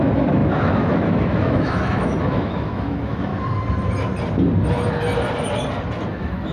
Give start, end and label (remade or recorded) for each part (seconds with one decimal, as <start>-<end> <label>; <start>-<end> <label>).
0.0-3.3 remade; 3.3-6.1 recorded; 6.1-6.5 remade